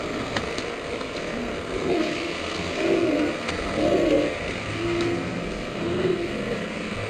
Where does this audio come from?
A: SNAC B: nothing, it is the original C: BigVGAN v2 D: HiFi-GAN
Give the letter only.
A